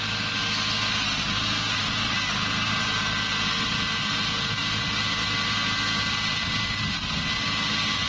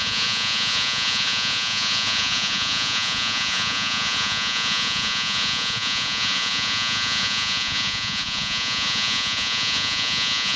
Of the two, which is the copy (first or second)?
second